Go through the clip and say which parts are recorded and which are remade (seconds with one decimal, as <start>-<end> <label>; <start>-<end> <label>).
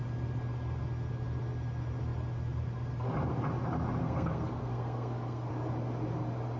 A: 0.0-4.0 recorded; 4.0-5.5 remade; 5.5-6.6 recorded